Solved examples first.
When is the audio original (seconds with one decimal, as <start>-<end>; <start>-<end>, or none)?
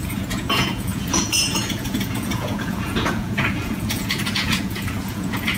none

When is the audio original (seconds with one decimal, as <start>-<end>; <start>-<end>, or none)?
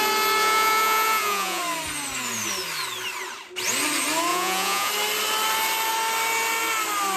0.0-0.4; 1.6-4.3; 4.9-7.2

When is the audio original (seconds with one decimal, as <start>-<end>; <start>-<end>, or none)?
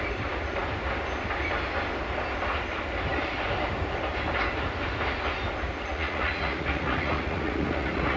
0.0-5.9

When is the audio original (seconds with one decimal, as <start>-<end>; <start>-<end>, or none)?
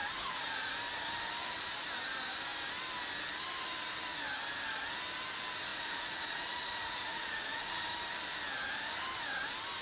0.7-5.7; 7.8-9.8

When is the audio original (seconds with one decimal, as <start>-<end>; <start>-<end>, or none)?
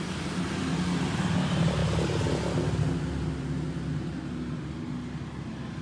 0.0-5.8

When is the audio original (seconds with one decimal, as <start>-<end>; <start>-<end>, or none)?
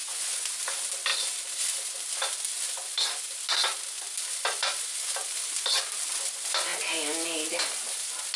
0.6-8.4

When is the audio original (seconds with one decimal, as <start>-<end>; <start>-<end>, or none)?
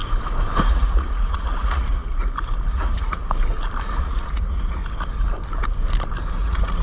0.0-0.6; 2.0-2.7; 3.2-4.0; 4.8-6.3